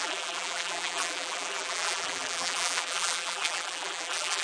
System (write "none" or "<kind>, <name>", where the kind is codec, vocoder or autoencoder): vocoder, BigVGAN v2